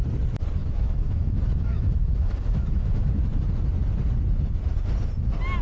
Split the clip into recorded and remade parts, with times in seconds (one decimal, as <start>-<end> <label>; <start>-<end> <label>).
0.0-0.6 recorded; 0.6-3.2 remade; 3.2-5.6 recorded